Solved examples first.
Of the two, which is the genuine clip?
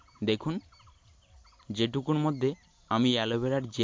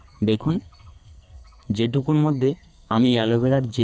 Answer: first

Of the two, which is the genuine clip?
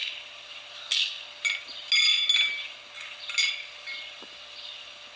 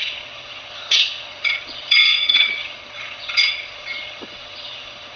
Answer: first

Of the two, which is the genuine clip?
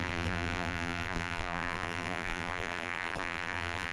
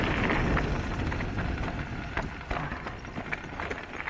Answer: second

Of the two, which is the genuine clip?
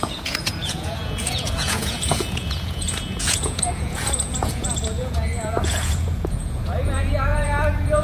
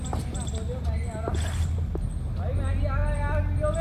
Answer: second